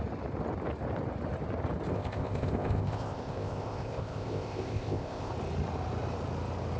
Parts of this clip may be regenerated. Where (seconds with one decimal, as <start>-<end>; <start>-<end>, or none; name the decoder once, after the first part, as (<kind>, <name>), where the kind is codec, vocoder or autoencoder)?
1.9-5.3 (codec, ZipCodec)